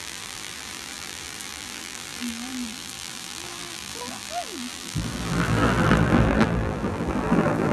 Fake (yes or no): yes